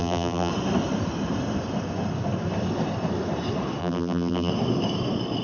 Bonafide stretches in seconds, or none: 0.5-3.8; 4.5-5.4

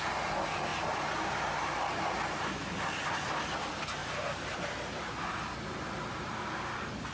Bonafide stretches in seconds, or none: 0.0-4.0; 4.6-7.1

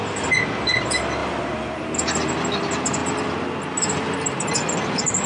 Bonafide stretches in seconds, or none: 0.0-1.2; 1.8-5.3

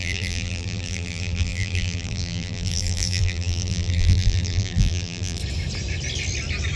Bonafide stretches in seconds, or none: 5.4-6.8

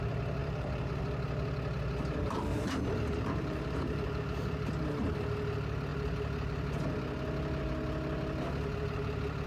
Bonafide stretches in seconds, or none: 0.0-0.4; 1.0-2.5; 4.2-9.5

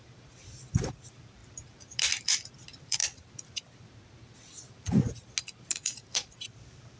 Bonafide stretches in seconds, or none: 3.0-5.4

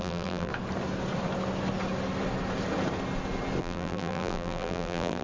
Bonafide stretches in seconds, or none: 0.5-3.6